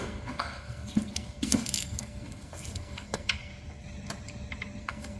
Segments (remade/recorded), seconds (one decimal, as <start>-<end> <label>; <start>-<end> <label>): 0.0-3.5 remade; 3.5-4.8 recorded; 4.8-5.2 remade